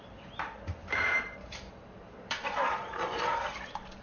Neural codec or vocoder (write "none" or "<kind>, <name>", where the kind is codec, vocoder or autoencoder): vocoder, BigVGAN v2